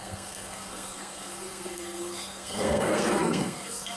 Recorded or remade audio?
remade